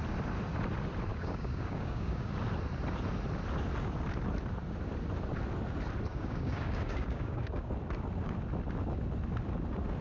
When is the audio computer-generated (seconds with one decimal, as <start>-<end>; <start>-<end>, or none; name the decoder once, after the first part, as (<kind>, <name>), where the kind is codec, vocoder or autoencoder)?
1.1-2.3 (codec, DAC); 6.1-7.7